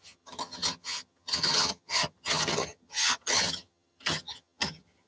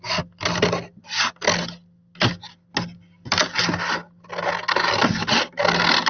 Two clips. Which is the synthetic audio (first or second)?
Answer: first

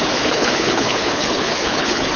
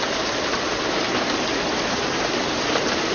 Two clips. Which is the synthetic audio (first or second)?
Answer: first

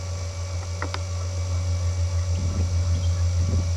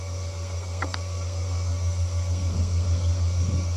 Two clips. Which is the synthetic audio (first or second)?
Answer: second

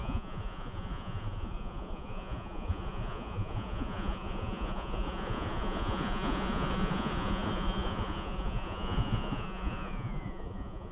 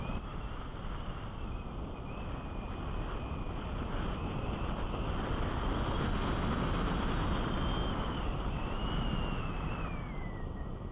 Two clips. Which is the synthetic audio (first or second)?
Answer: first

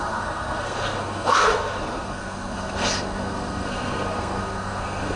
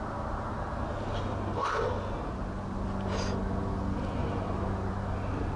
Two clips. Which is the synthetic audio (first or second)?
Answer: first